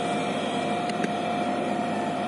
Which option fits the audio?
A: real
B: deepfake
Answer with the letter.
A